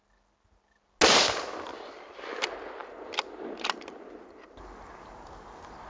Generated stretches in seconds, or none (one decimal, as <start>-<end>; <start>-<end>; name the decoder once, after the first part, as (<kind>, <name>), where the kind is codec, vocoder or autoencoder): none